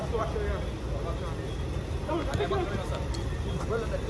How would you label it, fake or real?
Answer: real